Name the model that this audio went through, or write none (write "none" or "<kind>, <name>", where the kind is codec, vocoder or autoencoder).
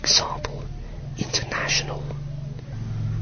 none